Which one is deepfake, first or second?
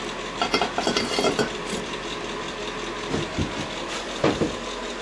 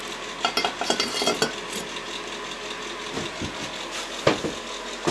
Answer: first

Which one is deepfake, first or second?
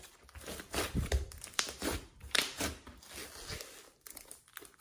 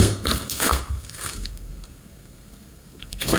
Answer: second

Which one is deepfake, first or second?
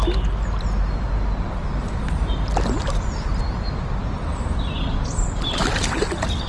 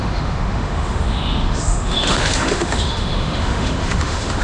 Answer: second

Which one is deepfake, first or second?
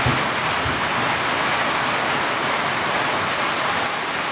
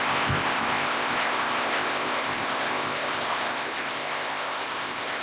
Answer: second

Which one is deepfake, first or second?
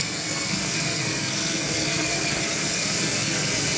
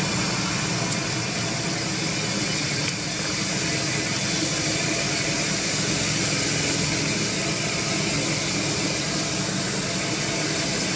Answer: first